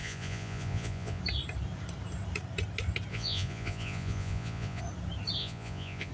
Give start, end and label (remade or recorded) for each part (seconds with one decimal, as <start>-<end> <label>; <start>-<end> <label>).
0.0-1.2 remade; 1.2-3.1 recorded; 3.1-4.8 remade; 4.8-5.4 recorded; 5.4-6.1 remade